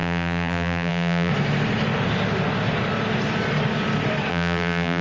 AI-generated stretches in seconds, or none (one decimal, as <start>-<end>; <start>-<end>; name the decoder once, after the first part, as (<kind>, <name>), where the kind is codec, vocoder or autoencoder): 0.0-1.3 (vocoder, BigVGAN v2); 4.3-5.0